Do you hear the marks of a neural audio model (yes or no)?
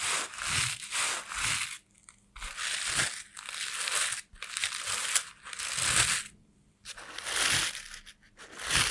no